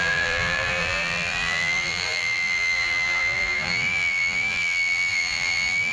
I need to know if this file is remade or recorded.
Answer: remade